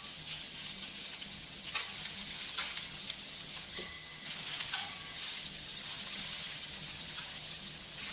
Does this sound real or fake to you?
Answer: fake